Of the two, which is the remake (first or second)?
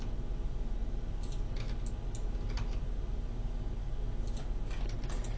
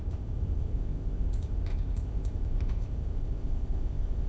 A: second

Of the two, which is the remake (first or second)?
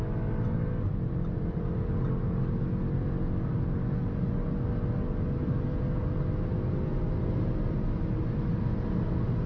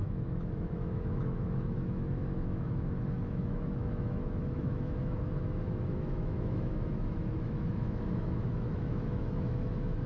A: second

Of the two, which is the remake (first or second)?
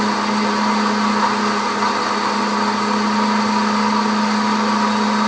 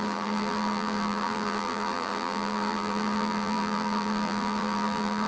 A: second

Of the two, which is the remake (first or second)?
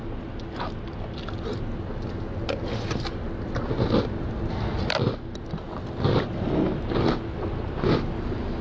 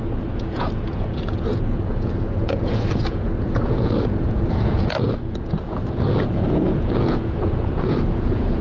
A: second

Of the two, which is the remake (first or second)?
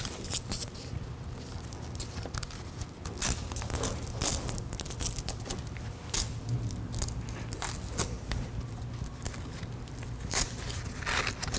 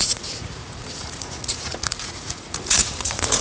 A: second